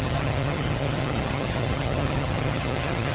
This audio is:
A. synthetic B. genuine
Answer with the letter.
A